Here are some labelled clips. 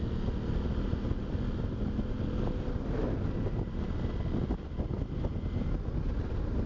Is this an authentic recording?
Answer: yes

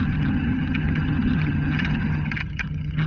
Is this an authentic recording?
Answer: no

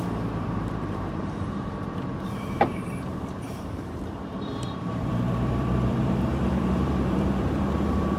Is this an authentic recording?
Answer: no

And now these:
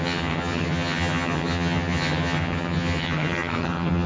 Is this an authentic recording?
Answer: no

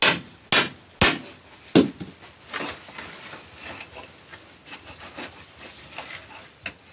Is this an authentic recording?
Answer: yes